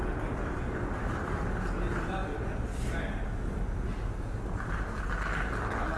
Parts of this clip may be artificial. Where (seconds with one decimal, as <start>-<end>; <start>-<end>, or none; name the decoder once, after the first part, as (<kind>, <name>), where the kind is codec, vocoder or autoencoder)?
none